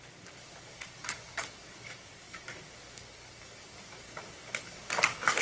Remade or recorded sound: remade